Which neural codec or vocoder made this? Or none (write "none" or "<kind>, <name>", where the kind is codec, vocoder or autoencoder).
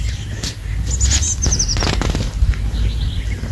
none